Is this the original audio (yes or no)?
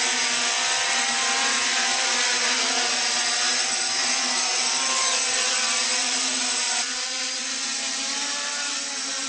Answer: no